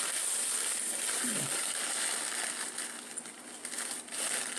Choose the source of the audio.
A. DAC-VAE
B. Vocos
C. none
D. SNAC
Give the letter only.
C